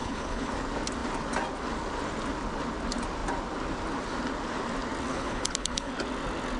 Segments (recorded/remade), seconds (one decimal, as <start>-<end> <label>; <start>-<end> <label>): 0.0-0.5 remade; 0.5-5.1 recorded; 5.1-5.9 remade; 5.9-6.6 recorded